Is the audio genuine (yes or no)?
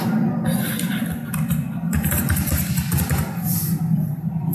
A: yes